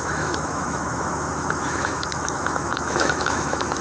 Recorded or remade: remade